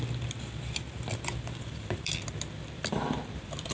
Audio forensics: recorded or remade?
remade